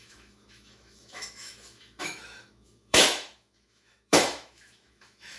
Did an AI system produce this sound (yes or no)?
yes